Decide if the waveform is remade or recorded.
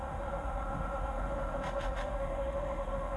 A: remade